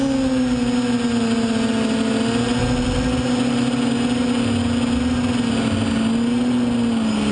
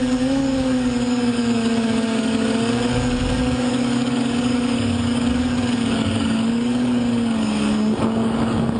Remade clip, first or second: second